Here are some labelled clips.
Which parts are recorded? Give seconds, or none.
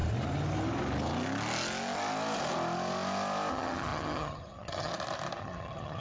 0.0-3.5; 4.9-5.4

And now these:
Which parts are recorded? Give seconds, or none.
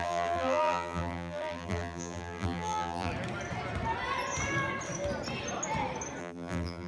3.1-6.2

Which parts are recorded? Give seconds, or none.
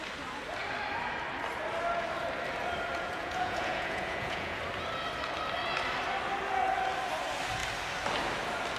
0.0-2.9; 4.6-8.8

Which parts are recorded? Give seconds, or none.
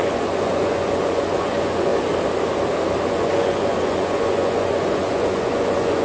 1.9-3.1